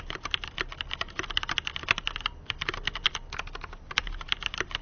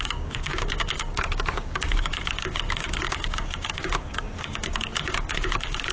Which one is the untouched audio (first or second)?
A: first